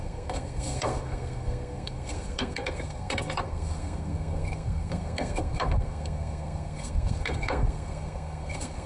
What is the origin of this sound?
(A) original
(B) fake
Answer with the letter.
B